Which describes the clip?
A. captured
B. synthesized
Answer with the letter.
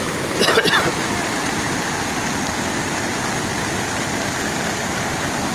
A